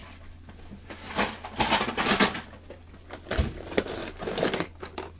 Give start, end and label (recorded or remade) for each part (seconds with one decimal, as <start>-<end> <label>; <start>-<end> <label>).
0.0-5.2 recorded

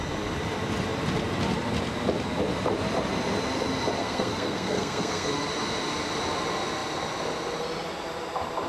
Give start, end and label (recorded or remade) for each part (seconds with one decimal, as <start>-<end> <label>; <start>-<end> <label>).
0.0-4.0 recorded; 4.0-5.3 remade; 5.3-8.7 recorded

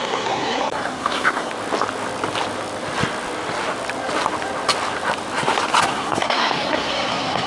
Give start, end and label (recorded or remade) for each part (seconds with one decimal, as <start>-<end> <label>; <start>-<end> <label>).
0.0-1.5 remade; 1.5-5.8 recorded; 5.8-7.5 remade